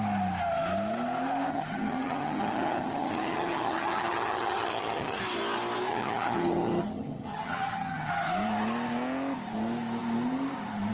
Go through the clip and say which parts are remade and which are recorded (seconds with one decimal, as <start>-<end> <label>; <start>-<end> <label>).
0.0-1.5 recorded; 1.5-5.2 remade; 5.2-5.9 recorded; 5.9-8.1 remade; 8.1-10.9 recorded